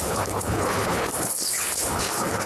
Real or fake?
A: fake